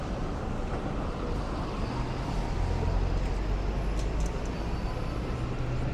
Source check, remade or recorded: recorded